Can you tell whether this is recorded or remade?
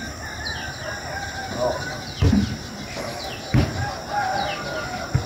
recorded